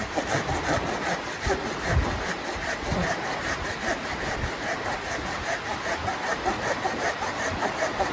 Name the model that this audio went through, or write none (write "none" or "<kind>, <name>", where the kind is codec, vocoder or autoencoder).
none